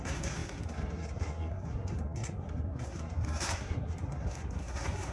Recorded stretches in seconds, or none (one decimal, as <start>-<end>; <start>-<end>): none